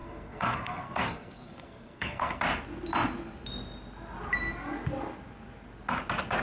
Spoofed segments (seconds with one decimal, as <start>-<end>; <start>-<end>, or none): 0.0-2.4